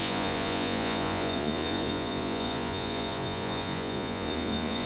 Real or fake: fake